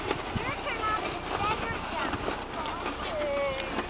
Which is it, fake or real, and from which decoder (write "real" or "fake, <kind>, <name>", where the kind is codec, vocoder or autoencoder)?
real